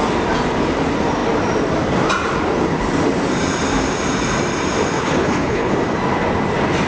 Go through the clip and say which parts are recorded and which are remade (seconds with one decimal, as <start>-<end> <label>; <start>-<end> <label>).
0.0-5.0 recorded; 5.0-5.7 remade; 5.7-6.9 recorded